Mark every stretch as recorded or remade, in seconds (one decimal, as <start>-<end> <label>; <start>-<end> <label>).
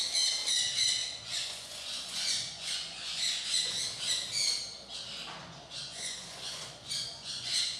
0.0-1.0 recorded; 1.0-3.8 remade; 3.8-5.4 recorded; 5.4-7.8 remade